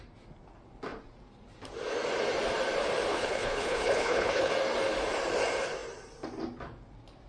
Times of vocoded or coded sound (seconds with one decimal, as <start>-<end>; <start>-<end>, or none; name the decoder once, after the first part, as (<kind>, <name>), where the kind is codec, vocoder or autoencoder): 3.1-4.5 (codec, HILCodec)